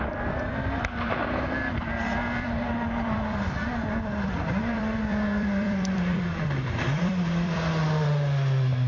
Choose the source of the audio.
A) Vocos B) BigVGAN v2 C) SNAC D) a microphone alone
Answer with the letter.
B